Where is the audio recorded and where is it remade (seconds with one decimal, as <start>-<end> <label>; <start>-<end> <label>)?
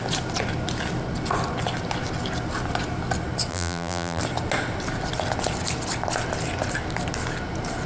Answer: 0.0-3.5 recorded; 3.5-4.2 remade; 4.2-7.9 recorded